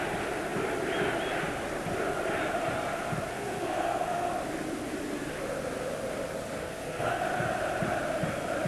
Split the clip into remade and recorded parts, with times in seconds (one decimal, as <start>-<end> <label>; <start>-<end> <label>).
0.0-3.3 recorded; 3.3-4.3 remade; 4.3-6.6 recorded; 6.6-7.2 remade; 7.2-8.7 recorded